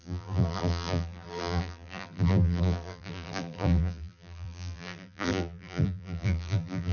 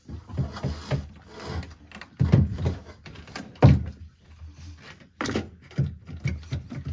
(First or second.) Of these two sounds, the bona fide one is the second